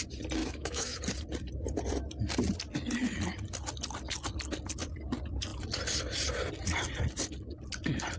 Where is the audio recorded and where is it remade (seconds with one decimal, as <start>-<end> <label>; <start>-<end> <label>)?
0.0-0.4 recorded; 0.4-1.0 remade; 1.0-8.2 recorded